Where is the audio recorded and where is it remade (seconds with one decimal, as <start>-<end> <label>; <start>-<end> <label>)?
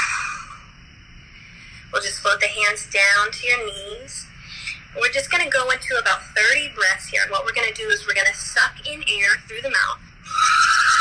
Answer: 0.0-3.9 recorded; 3.9-4.7 remade; 4.7-7.9 recorded; 7.9-9.5 remade; 9.5-11.0 recorded